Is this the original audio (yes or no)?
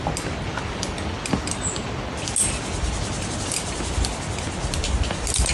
yes